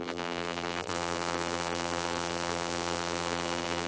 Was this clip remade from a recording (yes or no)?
yes